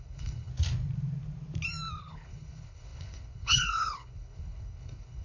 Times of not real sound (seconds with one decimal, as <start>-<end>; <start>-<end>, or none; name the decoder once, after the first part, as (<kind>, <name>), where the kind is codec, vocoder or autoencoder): 0.0-0.5 (codec, HILCodec); 2.0-5.2